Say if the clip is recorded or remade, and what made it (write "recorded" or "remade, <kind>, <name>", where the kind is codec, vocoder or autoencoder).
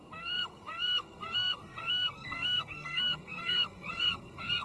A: remade, codec, SNAC